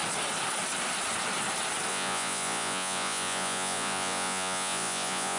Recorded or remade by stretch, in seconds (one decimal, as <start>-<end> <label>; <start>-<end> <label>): 0.0-1.9 recorded; 1.9-5.4 remade